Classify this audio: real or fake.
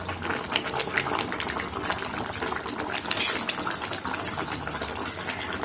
real